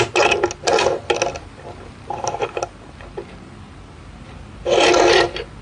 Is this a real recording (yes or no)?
yes